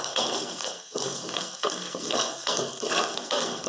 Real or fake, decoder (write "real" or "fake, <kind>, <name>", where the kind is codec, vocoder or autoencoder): fake, codec, SNAC